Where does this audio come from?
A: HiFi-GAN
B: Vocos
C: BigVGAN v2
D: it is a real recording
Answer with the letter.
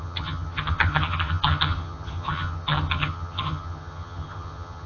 A